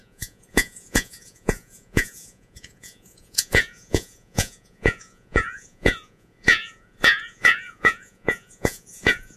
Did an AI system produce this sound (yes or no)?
yes